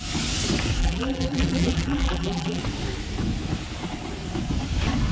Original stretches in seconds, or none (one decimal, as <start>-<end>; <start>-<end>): 0.0-0.8; 2.6-5.1

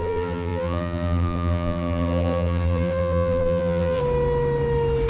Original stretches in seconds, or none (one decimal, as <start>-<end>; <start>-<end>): 4.0-5.1

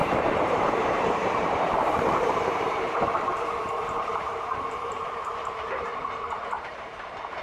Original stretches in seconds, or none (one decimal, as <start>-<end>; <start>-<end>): none

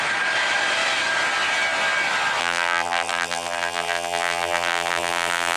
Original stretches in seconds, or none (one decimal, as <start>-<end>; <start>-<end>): 0.0-2.4